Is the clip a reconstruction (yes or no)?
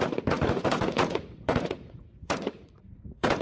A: yes